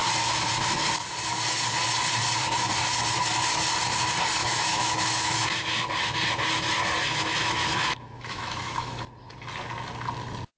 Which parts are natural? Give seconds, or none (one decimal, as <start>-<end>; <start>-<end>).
0.0-4.4; 5.8-7.1; 9.0-10.6

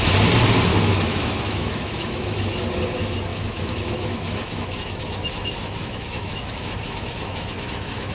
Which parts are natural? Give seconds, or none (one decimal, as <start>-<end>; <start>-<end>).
0.0-0.7; 2.6-3.3